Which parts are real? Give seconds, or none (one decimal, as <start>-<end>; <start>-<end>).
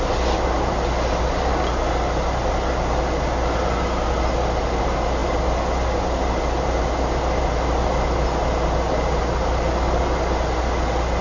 0.0-11.2